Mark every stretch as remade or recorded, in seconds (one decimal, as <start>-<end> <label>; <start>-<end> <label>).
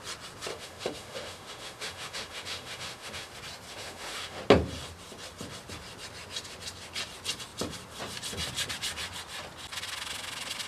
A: 0.0-0.5 recorded; 0.5-3.3 remade; 3.3-3.7 recorded; 3.7-4.4 remade; 4.4-10.7 recorded